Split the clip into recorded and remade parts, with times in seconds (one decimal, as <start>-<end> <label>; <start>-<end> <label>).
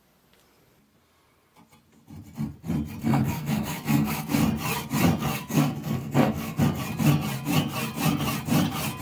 0.0-3.0 recorded; 3.0-4.4 remade; 4.4-5.3 recorded; 5.3-6.6 remade; 6.6-9.0 recorded